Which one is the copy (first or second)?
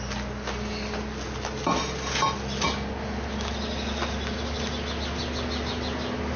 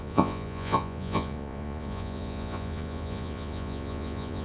second